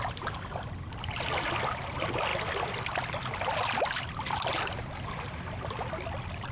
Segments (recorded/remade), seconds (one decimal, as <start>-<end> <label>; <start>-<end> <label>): 0.0-6.5 recorded